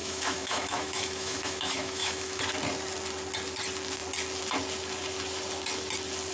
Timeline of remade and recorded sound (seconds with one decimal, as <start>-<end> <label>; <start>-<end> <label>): 0.0-2.4 remade; 2.4-6.3 recorded